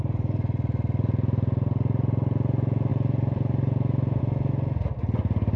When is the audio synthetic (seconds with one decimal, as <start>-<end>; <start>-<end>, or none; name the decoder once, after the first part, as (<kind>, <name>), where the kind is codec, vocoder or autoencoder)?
2.9-4.2 (vocoder, BigVGAN v2)